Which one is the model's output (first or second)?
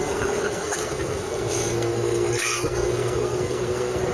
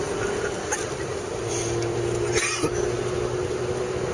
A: first